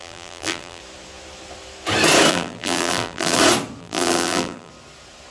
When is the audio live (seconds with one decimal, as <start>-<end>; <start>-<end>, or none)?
0.8-2.3; 3.4-3.8; 4.7-5.3